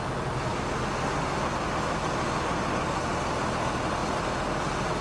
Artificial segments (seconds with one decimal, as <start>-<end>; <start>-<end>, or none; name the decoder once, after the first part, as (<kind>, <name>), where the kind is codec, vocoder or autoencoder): none

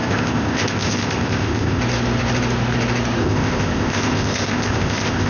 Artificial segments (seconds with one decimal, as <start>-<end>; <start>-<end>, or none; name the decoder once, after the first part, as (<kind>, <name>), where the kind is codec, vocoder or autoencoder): 0.0-1.8 (codec, ZipCodec); 3.2-5.3

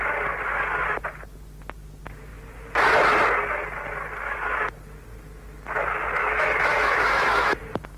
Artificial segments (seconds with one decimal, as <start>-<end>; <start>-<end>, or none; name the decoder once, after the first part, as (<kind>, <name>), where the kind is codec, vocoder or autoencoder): 6.2-7.6 (autoencoder, DAC-VAE)

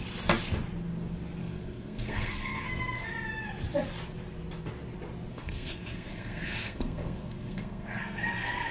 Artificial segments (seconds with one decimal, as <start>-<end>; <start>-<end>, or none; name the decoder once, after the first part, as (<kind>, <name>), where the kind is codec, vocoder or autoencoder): 1.4-3.1 (codec, SNAC); 5.3-8.7

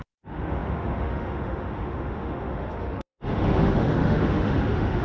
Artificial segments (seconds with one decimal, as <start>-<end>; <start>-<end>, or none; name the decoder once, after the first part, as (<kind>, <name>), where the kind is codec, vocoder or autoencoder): 0.0-5.0 (autoencoder, DAC-VAE)

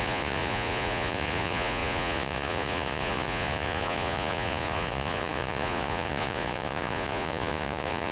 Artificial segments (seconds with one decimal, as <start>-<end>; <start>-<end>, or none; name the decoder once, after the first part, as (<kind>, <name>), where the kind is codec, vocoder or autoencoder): 0.0-8.1 (vocoder, Vocos)